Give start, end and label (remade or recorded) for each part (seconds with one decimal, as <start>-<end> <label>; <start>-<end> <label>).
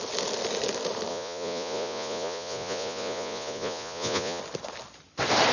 0.0-1.1 recorded; 1.1-4.4 remade; 4.4-5.5 recorded